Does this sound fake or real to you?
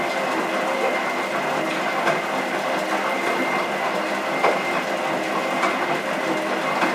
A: real